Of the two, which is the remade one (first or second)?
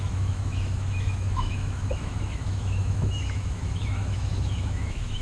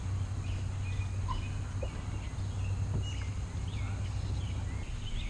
first